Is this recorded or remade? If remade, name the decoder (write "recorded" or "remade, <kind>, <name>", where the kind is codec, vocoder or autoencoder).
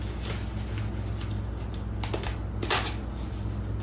recorded